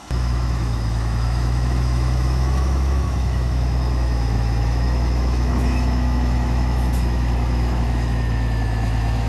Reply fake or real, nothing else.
fake